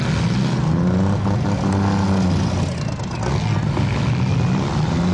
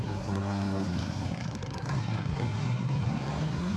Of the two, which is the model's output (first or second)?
second